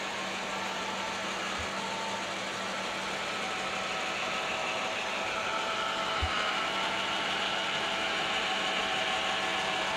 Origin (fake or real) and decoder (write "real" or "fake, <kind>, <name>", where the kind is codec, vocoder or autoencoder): real